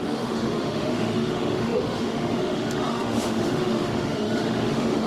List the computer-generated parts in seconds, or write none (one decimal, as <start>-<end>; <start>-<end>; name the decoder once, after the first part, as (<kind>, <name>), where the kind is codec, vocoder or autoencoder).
0.0-5.1 (autoencoder, DAC-VAE)